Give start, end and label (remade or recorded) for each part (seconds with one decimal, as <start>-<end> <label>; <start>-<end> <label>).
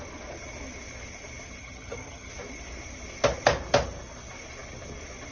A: 0.0-1.6 recorded; 1.6-2.3 remade; 2.3-5.3 recorded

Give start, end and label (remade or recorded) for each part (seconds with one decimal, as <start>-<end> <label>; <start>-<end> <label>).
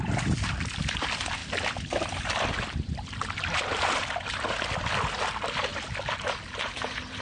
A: 0.0-1.4 recorded; 1.4-4.8 remade; 4.8-5.7 recorded; 5.7-7.2 remade